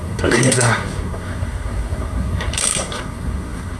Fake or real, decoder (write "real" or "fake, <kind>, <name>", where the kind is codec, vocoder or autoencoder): fake, codec, SNAC